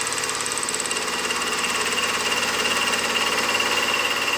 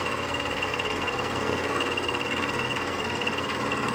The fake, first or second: second